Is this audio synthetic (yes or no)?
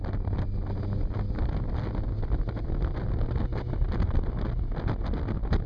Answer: no